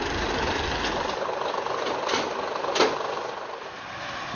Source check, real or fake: real